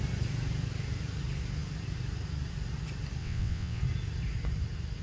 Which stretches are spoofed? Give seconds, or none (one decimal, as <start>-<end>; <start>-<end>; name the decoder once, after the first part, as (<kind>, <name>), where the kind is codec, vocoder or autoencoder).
3.2-3.8 (vocoder, WaveNeXt)